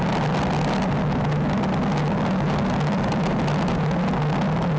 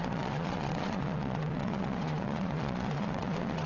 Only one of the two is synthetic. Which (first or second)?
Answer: second